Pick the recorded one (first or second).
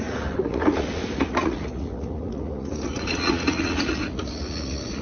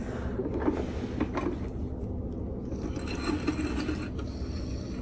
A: second